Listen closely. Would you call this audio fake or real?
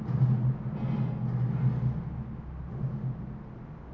real